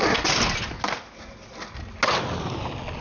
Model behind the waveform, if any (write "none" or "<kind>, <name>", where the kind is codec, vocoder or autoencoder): none